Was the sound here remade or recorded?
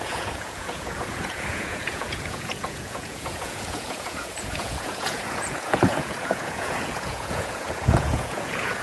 remade